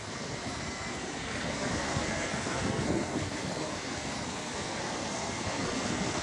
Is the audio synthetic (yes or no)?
yes